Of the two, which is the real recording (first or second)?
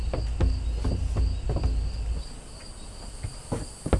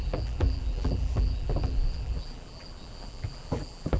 first